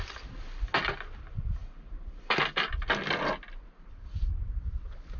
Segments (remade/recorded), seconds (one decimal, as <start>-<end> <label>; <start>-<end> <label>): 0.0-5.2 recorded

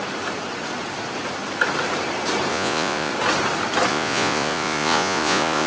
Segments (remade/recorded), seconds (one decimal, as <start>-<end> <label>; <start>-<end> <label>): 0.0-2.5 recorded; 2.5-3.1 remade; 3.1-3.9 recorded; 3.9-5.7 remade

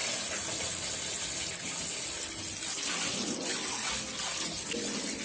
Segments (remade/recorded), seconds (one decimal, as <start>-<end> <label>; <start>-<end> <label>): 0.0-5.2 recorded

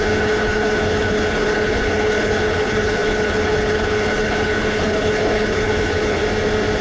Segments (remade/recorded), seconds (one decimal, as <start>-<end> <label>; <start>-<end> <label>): 0.0-6.2 remade; 6.2-6.8 recorded

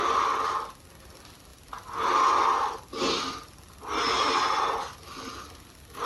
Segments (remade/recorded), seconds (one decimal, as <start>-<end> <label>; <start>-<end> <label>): 0.0-6.1 recorded

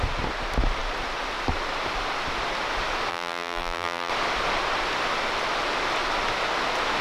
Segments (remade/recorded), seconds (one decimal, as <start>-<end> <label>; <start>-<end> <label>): 0.0-3.1 recorded; 3.1-4.1 remade; 4.1-7.0 recorded